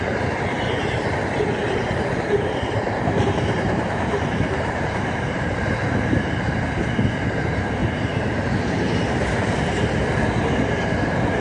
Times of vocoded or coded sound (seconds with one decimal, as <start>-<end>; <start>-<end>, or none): 1.6-6.4; 7.8-9.9